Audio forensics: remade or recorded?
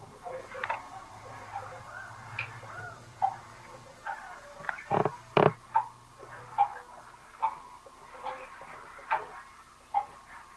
recorded